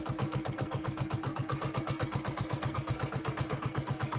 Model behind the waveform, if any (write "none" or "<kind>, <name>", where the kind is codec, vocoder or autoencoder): codec, SNAC